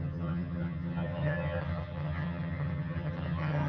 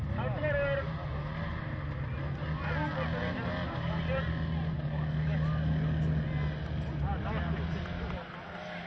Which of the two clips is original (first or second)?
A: second